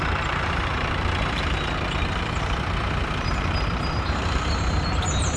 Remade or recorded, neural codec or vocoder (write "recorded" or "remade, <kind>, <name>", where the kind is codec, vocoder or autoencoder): remade, vocoder, BigVGAN v2